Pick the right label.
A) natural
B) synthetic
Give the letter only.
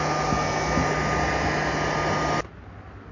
A